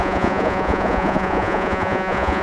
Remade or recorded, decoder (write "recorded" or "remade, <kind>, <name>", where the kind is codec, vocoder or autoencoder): remade, vocoder, Vocos